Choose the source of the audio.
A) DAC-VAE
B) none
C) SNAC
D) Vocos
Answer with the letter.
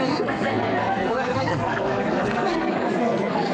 C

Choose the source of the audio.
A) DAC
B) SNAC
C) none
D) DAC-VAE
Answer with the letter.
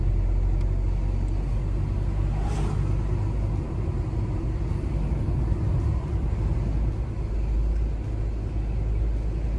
C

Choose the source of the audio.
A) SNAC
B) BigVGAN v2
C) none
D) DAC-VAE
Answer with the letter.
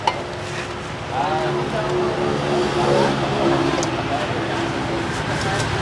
C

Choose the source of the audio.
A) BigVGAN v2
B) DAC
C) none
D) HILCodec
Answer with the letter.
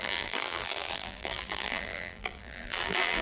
A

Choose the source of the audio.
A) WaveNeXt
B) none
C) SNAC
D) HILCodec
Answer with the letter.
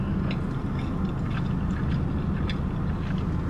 B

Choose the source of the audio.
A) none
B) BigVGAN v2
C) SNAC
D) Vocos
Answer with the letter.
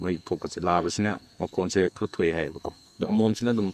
C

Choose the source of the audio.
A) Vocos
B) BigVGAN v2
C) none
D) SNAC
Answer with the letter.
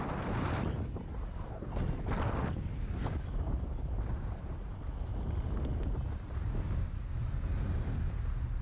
C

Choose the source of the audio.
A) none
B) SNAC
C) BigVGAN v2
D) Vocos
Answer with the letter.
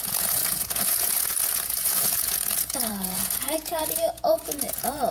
D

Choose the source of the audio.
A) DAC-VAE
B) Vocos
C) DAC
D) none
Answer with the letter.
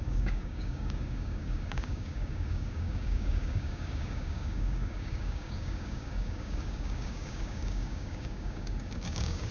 C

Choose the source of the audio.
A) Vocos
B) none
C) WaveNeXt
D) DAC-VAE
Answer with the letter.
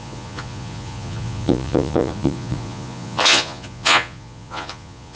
A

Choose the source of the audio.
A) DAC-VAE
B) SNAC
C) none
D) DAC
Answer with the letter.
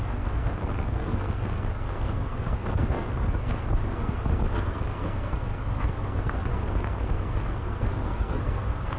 B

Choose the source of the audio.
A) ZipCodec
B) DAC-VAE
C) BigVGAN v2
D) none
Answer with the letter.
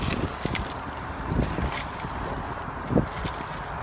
C